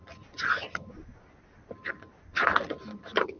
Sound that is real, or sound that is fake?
real